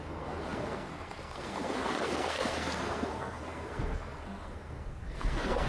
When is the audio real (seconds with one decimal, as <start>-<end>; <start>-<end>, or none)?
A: none

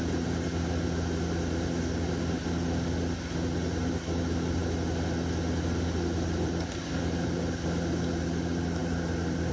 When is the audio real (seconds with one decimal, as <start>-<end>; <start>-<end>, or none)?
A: 0.0-9.5

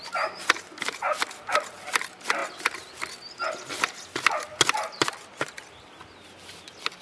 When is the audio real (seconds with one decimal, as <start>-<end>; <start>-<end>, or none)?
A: 0.0-7.0

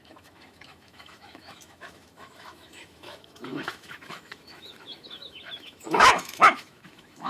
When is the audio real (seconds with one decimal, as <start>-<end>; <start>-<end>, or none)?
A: none